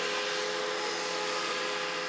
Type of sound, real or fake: real